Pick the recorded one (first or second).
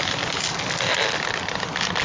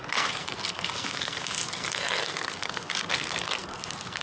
first